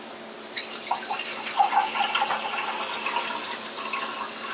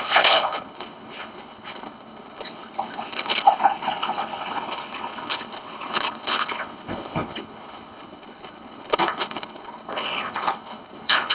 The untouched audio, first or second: first